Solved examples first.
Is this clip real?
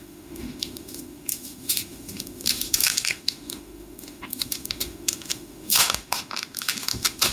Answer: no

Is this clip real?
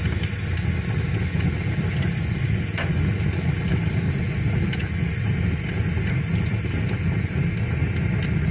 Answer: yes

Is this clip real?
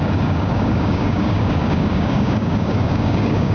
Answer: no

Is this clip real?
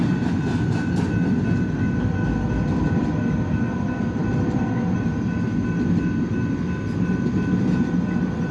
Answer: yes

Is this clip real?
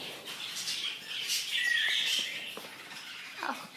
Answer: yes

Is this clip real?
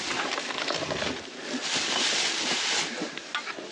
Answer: yes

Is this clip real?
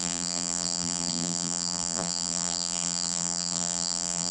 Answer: no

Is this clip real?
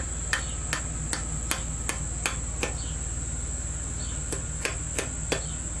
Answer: yes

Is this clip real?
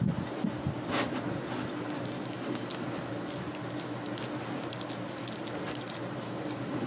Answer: yes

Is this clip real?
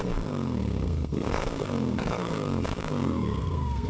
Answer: no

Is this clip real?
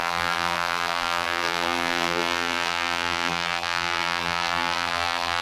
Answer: no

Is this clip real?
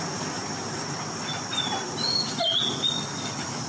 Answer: yes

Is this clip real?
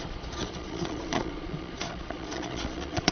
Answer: no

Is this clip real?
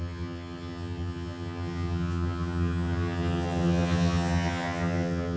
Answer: no